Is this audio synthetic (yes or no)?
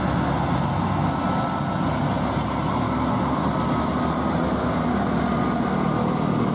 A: no